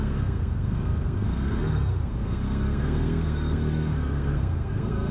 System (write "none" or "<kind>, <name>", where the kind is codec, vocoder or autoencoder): codec, SNAC